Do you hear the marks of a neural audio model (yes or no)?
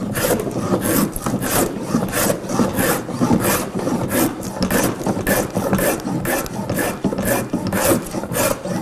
no